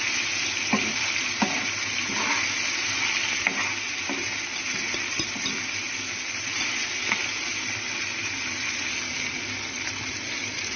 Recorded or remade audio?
recorded